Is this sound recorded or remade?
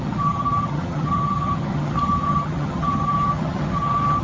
remade